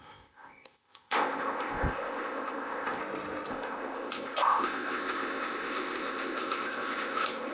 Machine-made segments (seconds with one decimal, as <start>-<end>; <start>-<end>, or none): 0.0-3.0; 3.5-7.5